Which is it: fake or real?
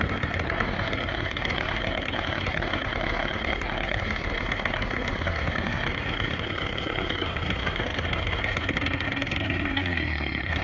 fake